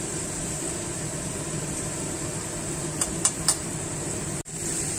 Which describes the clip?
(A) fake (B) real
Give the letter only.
A